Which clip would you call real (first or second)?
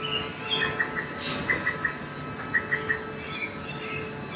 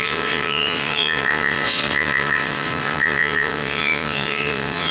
first